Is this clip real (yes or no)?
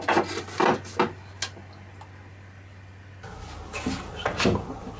yes